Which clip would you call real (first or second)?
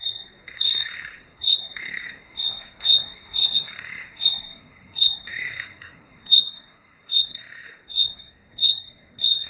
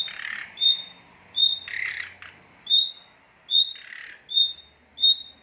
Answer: second